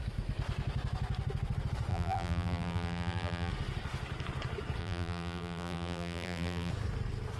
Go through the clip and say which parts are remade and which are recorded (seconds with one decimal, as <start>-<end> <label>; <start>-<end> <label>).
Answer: 0.0-1.9 recorded; 1.9-3.5 remade; 3.5-4.8 recorded; 4.8-6.7 remade; 6.7-7.4 recorded